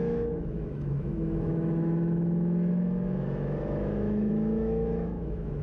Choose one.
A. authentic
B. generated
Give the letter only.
B